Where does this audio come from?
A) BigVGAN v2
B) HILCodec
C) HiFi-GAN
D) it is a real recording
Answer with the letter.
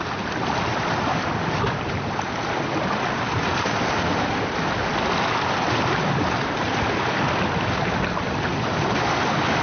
D